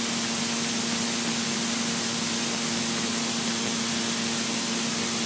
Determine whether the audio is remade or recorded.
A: recorded